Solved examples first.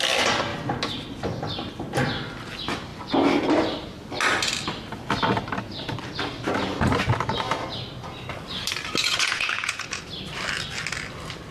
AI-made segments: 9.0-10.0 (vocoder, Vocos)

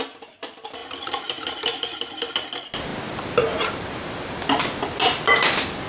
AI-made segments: none

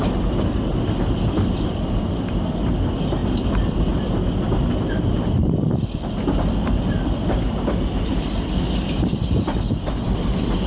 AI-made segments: none

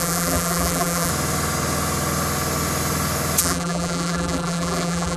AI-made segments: 0.0-1.1 (vocoder, BigVGAN v2); 3.4-5.2

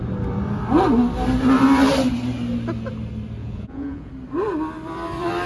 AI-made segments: 3.4-4.1 (vocoder, Vocos)

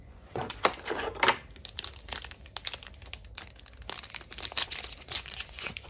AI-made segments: 0.0-1.1 (vocoder, Vocos); 4.6-5.9

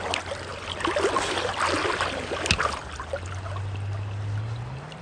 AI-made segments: 0.5-1.5 (vocoder, BigVGAN v2)